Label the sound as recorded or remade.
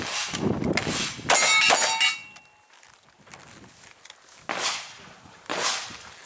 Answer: recorded